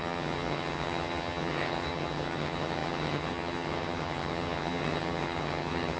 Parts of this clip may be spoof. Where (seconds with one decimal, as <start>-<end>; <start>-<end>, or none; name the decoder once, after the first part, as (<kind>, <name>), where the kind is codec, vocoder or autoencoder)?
0.0-6.0 (vocoder, HiFi-GAN)